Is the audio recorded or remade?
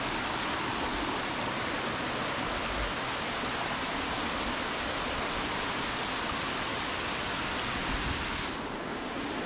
recorded